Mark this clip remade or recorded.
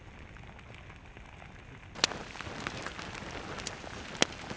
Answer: recorded